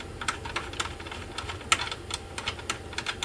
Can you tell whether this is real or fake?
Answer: real